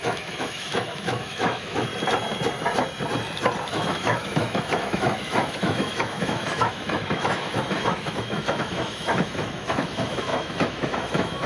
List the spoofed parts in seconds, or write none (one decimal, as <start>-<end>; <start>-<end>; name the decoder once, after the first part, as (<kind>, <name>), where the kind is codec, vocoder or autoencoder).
0.0-1.9 (autoencoder, DAC-VAE); 3.7-11.5